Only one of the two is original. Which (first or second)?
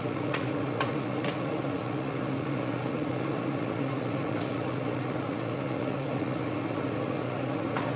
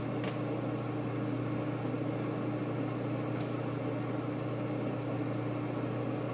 second